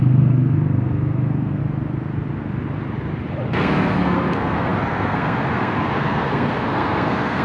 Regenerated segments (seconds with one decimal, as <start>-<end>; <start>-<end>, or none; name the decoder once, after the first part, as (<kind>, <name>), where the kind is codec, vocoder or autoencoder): 0.0-1.6 (codec, SNAC); 3.5-7.4